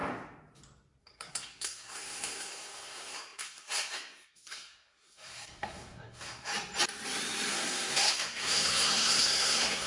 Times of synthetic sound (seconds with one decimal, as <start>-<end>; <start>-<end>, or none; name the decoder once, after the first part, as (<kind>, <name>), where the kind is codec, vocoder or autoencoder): 1.0-6.5 (codec, SNAC); 7.5-9.9